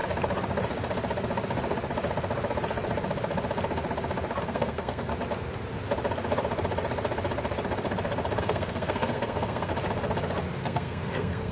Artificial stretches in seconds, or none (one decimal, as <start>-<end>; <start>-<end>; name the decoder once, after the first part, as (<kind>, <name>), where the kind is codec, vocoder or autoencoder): 4.4-5.1 (codec, SNAC); 8.4-9.7; 10.6-11.5